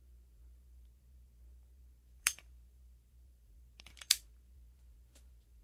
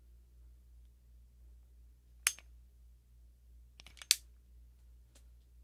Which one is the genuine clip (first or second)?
second